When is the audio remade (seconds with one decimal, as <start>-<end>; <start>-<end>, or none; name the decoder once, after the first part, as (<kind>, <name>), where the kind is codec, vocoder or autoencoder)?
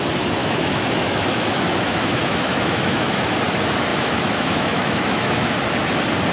0.4-3.3 (autoencoder, DAC-VAE); 3.9-5.5